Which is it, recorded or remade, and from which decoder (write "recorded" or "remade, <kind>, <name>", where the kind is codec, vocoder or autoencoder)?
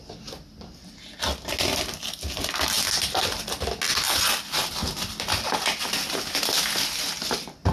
recorded